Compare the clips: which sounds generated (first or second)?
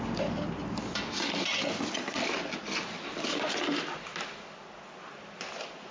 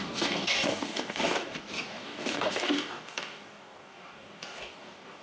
second